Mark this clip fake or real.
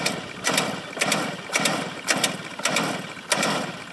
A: real